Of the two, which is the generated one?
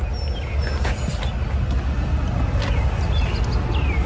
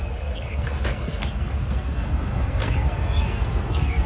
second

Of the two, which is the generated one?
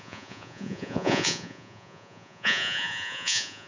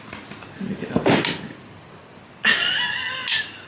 first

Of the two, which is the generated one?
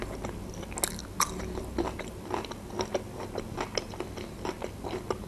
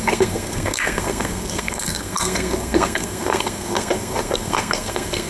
second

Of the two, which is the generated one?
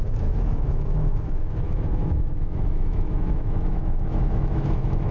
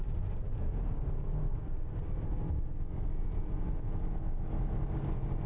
first